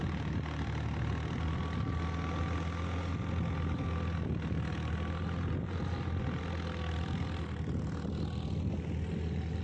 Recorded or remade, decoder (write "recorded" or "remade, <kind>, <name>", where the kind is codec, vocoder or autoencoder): recorded